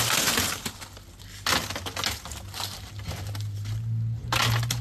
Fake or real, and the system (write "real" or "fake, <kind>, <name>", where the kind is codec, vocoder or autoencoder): real